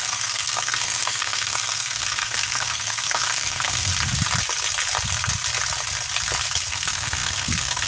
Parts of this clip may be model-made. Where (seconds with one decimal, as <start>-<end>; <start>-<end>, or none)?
0.0-3.9; 6.7-7.9

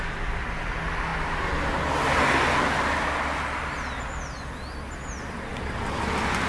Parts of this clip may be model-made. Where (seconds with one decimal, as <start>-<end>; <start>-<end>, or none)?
none

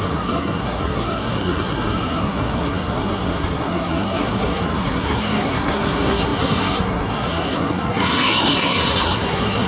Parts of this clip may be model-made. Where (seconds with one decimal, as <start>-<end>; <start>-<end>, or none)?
0.0-9.7

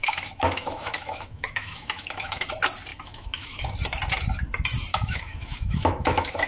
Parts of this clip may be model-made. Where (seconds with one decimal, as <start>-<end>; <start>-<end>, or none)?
0.0-2.5; 2.9-3.6; 4.9-6.5

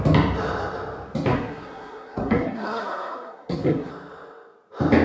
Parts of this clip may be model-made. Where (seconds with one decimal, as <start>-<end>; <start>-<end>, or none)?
1.3-3.9